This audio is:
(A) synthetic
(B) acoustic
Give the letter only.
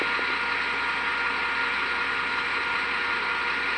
B